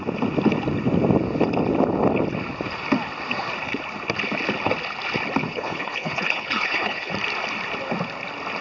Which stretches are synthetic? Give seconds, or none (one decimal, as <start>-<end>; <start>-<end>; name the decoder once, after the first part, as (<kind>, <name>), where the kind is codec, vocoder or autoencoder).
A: 5.4-7.1 (codec, HILCodec)